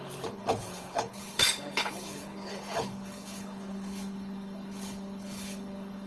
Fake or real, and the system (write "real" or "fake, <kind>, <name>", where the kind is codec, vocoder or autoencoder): fake, codec, HILCodec